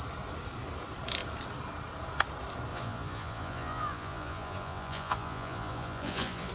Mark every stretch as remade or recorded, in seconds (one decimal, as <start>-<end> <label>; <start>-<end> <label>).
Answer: 0.0-2.7 recorded; 2.7-6.5 remade